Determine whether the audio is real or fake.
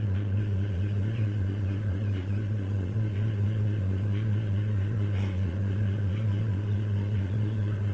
fake